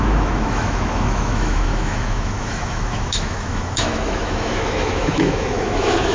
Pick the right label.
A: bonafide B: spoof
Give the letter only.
B